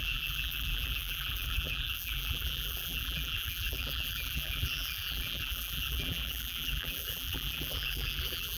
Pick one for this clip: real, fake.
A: fake